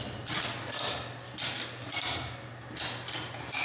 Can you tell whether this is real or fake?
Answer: real